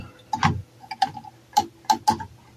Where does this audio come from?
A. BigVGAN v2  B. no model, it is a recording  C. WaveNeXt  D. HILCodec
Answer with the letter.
B